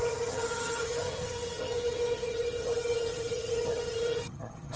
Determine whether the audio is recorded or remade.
remade